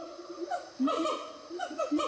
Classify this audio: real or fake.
fake